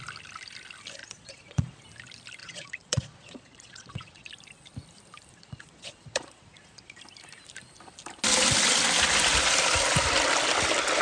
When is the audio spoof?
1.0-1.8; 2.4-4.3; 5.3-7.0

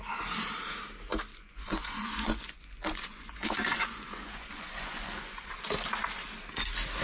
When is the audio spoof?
1.3-5.5

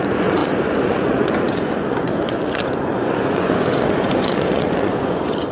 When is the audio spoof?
0.0-5.5

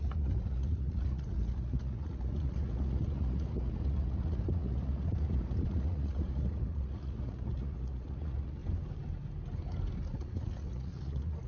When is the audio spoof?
0.0-8.6; 10.1-11.5

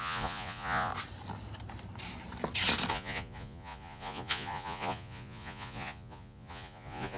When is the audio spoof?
0.0-0.9; 2.9-7.2

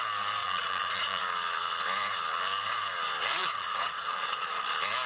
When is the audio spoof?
0.4-1.2; 3.4-4.6